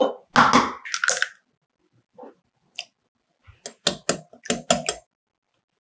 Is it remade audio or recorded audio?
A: recorded